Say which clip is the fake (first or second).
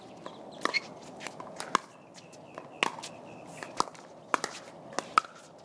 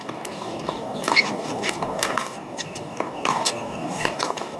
second